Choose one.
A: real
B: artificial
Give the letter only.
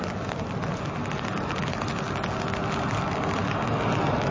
A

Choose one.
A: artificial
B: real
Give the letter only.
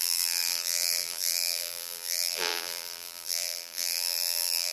A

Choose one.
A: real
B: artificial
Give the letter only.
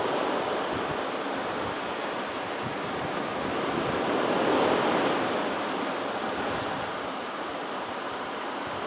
A